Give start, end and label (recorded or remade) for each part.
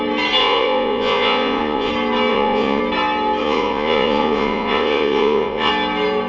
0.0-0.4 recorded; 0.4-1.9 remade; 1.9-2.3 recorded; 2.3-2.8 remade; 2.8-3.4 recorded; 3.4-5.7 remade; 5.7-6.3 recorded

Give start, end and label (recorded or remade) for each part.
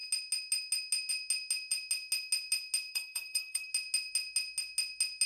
0.0-2.9 recorded; 2.9-3.7 remade; 3.7-5.3 recorded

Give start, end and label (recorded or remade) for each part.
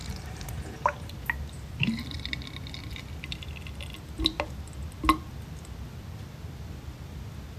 0.0-7.6 recorded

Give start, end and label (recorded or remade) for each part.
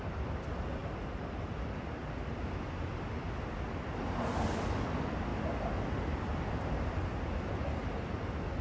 0.0-8.6 recorded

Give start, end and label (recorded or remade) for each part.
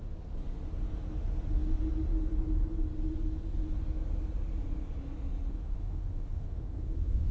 0.0-5.5 recorded; 5.5-7.3 remade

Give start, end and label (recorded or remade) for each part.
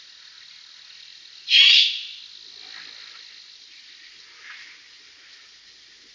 0.0-6.1 recorded